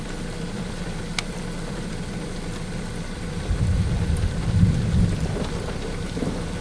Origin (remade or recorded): remade